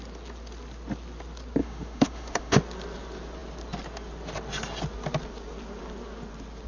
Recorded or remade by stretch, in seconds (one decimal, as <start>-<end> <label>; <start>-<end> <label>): 0.0-1.6 recorded; 1.6-2.6 remade; 2.6-6.7 recorded

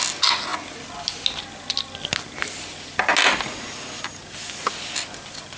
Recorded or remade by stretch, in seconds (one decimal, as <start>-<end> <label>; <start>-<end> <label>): 0.0-5.6 recorded